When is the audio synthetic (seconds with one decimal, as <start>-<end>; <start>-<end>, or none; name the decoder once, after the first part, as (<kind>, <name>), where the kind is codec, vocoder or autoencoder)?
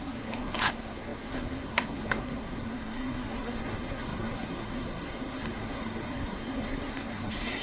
0.0-7.6 (codec, SNAC)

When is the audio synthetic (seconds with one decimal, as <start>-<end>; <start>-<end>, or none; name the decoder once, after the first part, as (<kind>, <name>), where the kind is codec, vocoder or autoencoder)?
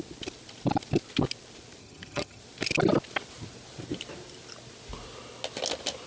1.8-2.4 (vocoder, HiFi-GAN)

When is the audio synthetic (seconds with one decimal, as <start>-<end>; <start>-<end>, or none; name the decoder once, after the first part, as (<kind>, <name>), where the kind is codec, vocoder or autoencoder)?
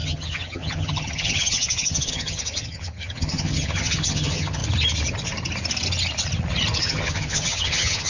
0.0-4.6 (vocoder, HiFi-GAN); 6.8-8.1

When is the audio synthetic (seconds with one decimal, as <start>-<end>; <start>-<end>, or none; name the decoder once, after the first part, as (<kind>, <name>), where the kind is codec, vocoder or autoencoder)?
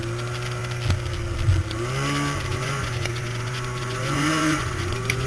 2.5-5.3 (vocoder, Vocos)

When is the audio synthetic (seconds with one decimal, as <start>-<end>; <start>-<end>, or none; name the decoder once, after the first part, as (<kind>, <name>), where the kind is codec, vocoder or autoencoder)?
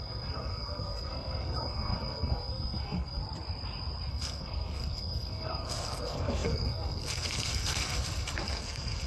0.0-3.2 (codec, SNAC); 4.1-9.1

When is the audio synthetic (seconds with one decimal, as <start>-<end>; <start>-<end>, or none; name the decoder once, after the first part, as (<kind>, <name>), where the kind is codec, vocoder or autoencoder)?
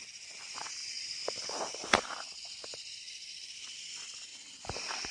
none